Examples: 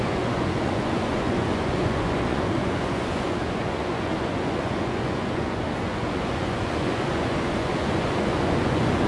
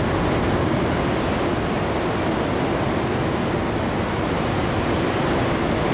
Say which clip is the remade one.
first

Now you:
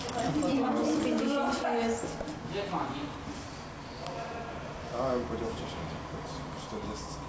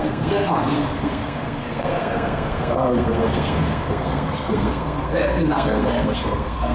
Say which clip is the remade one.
second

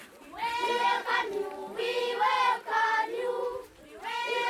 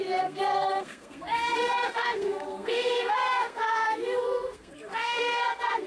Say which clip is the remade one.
second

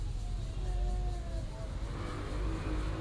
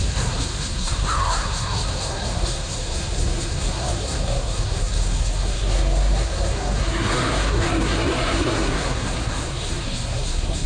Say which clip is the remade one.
second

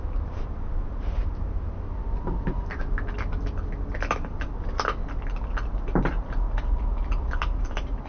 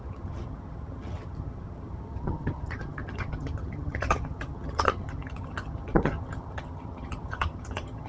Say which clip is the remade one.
second